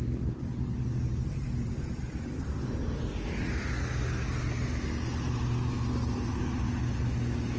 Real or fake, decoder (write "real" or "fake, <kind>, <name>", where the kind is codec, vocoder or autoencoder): real